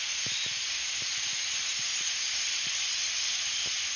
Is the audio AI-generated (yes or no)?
no